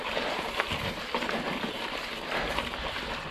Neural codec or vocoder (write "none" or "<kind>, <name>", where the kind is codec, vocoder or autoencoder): none